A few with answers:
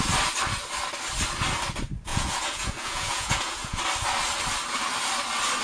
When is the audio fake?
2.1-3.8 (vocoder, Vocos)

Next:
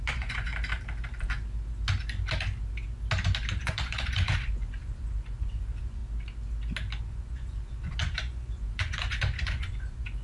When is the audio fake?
0.0-0.5 (vocoder, Vocos); 3.6-6.0; 7.0-10.2

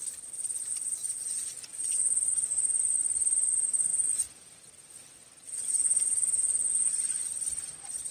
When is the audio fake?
1.0-2.8 (vocoder, Vocos); 3.9-6.9

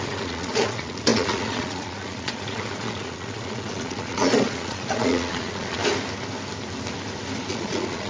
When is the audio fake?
0.0-5.8 (vocoder, Vocos); 7.5-8.1